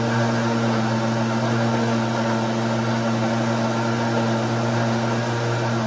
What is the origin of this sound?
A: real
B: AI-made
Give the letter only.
A